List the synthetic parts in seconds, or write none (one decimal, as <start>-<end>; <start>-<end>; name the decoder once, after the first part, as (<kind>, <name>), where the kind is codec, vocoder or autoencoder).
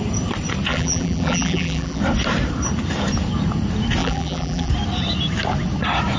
0.7-2.0 (vocoder, BigVGAN v2); 4.0-4.7